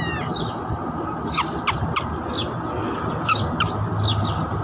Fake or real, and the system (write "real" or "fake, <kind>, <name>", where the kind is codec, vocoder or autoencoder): real